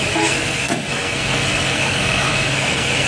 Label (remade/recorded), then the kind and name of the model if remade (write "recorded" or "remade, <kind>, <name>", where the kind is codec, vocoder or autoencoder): remade, codec, SNAC